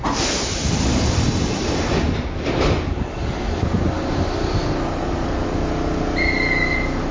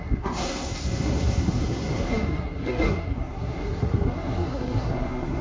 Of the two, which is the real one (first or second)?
first